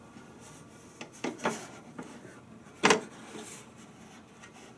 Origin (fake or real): real